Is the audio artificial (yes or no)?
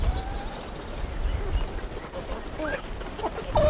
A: no